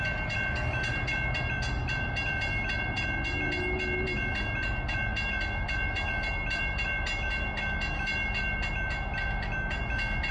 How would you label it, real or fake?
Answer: real